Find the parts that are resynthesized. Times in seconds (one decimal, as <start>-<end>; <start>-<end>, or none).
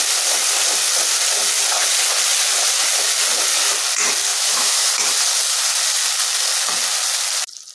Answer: 4.3-4.9